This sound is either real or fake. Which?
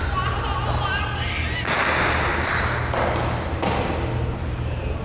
real